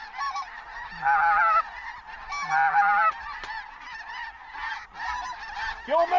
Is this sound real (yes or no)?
yes